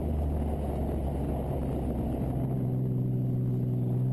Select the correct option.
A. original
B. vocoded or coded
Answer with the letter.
A